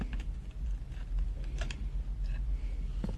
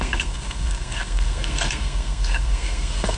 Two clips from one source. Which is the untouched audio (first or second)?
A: first